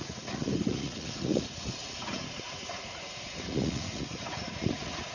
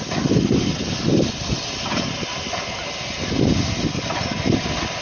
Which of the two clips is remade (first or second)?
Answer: first